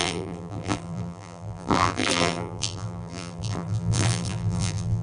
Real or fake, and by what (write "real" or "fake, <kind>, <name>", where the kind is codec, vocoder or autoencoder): fake, vocoder, BigVGAN v2